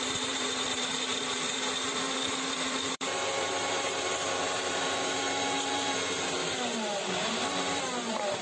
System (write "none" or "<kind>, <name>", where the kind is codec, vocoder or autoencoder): vocoder, BigVGAN v2